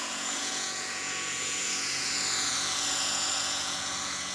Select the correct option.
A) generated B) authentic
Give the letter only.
A